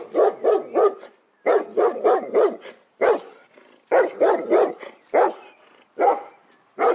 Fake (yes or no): no